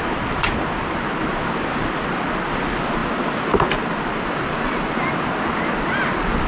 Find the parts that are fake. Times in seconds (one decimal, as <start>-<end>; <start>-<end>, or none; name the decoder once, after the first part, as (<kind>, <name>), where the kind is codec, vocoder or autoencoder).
none